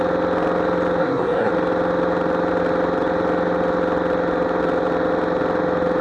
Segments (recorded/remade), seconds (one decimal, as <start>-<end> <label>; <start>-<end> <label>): 0.0-1.0 recorded; 1.0-1.5 remade; 1.5-6.0 recorded